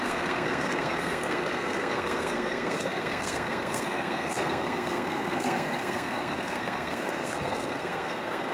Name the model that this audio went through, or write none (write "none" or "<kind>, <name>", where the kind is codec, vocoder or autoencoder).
codec, SNAC